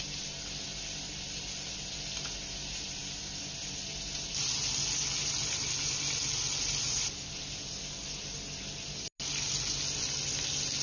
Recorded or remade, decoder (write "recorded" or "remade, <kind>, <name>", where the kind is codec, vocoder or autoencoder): recorded